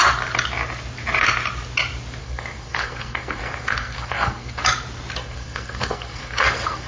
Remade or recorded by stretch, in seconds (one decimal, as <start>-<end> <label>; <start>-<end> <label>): 0.0-2.2 recorded; 2.2-4.6 remade; 4.6-5.2 recorded; 5.2-6.9 remade